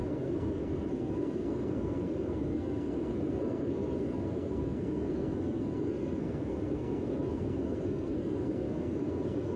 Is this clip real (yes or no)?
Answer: no